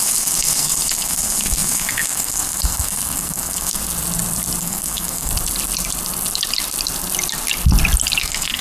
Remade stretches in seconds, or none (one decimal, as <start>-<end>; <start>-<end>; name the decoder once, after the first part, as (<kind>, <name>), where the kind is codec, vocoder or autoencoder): 0.0-3.8 (codec, SNAC); 4.6-5.3; 8.2-8.6